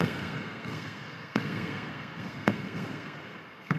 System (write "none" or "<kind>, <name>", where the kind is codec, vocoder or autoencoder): codec, SNAC